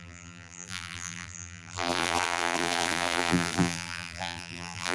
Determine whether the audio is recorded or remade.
remade